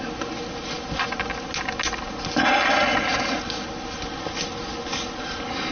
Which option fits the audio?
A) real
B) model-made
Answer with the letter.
A